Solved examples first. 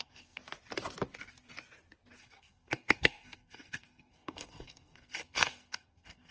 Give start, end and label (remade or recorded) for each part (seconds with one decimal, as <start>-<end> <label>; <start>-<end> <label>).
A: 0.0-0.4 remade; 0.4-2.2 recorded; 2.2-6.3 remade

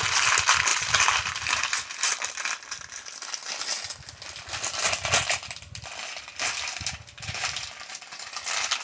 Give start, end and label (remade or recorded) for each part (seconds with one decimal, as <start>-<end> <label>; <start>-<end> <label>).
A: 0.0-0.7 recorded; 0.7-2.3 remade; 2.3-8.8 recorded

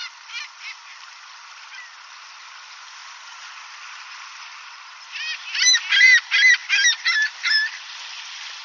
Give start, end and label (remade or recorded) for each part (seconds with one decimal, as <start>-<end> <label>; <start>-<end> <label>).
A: 0.0-3.0 remade; 3.0-4.2 recorded; 4.2-8.6 remade